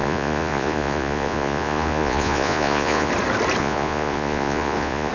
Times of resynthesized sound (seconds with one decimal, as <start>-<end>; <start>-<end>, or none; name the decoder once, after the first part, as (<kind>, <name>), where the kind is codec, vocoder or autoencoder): 0.0-3.1 (vocoder, Vocos); 3.6-5.1